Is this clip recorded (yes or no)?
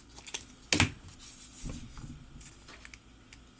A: yes